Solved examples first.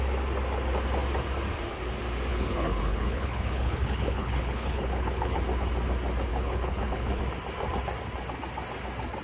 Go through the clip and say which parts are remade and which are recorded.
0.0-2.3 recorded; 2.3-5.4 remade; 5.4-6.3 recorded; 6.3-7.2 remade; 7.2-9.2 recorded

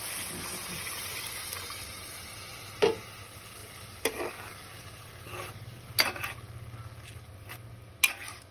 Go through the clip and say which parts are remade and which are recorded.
0.0-8.5 recorded

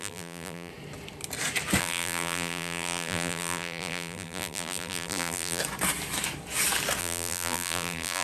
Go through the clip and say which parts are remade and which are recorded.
0.0-0.7 remade; 0.7-1.8 recorded; 1.8-5.6 remade; 5.6-7.0 recorded; 7.0-8.2 remade

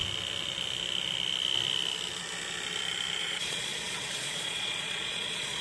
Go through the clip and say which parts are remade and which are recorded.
0.0-3.2 recorded; 3.2-5.6 remade